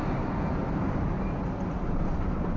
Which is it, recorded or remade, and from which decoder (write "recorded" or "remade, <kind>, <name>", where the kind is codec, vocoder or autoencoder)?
recorded